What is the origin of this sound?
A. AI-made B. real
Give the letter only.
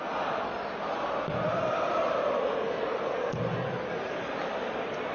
B